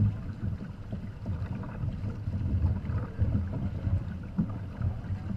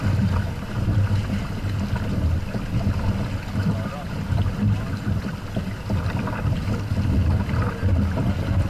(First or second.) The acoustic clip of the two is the second